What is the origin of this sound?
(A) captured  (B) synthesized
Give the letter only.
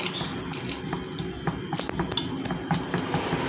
A